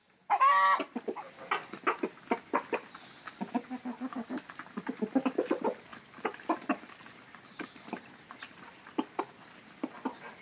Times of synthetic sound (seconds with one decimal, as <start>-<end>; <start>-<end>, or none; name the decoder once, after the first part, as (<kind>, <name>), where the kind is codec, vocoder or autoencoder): 0.0-1.0 (vocoder, BigVGAN v2); 5.9-9.2